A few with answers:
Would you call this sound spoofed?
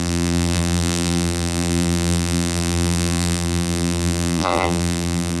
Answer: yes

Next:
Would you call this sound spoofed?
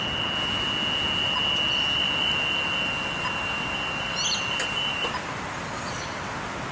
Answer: no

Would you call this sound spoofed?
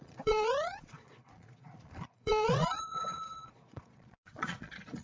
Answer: yes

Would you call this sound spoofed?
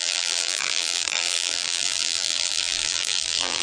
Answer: yes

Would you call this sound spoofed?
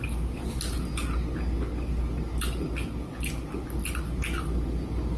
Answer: no